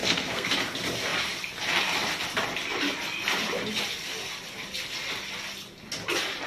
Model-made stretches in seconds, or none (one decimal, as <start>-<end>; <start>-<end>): 0.0-0.5